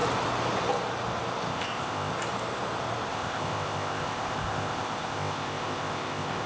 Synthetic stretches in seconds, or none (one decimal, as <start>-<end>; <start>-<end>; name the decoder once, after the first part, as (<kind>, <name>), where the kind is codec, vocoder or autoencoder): 1.5-2.1 (codec, ZipCodec); 3.1-6.5

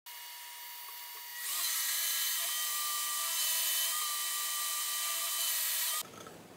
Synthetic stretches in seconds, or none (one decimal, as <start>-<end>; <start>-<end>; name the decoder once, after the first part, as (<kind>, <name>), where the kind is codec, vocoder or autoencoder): none

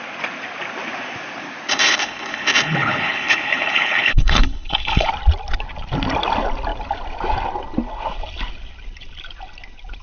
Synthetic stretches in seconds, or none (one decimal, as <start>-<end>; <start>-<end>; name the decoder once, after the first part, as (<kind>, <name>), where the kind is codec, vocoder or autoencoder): 1.7-5.1 (codec, HILCodec)

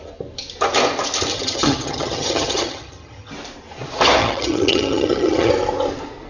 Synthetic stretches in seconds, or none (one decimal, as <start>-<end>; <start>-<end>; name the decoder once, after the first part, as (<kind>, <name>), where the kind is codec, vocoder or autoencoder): 1.3-3.3 (vocoder, HiFi-GAN); 4.2-5.5